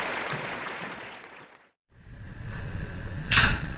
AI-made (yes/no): yes